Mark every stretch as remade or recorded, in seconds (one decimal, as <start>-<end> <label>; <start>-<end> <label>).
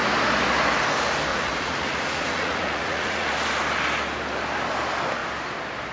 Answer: 0.0-1.3 recorded; 1.3-3.3 remade; 3.3-5.9 recorded